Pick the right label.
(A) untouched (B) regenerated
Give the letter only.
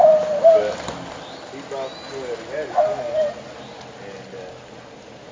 A